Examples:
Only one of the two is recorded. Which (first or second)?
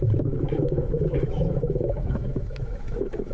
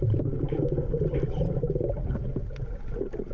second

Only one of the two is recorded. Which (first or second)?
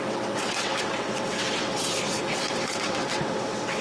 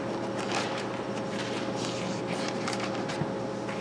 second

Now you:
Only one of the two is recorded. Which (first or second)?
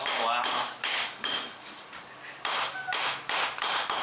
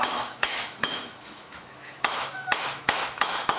first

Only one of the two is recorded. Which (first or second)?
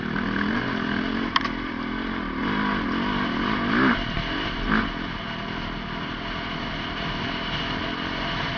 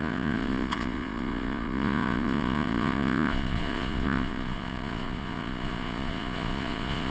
first